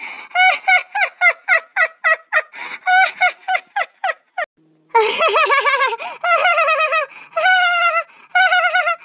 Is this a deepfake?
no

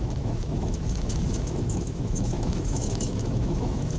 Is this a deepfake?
yes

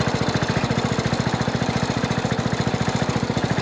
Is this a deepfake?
no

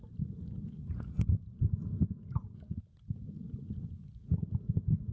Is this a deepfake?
no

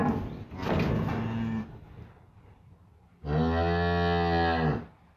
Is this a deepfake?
no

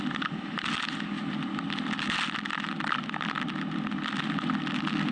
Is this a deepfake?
no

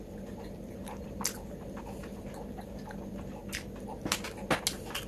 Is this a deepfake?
no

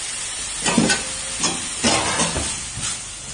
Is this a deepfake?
no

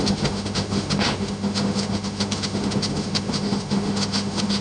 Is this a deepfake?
yes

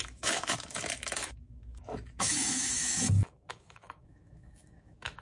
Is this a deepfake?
yes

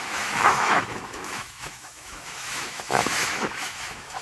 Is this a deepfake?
yes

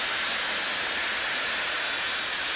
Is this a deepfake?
no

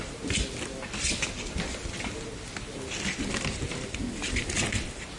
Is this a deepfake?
no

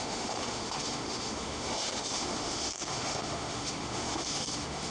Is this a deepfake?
yes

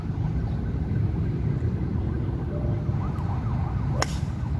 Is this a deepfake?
no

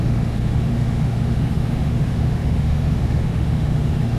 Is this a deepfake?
yes